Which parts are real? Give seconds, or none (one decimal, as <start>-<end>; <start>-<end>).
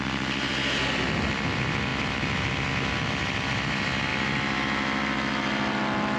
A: 0.0-6.2